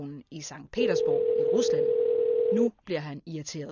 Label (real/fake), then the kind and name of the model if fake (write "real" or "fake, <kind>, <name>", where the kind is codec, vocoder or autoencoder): real